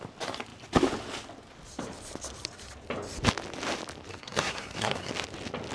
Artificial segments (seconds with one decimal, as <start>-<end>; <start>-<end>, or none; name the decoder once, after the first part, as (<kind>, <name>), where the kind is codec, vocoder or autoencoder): 4.1-5.1 (codec, SNAC)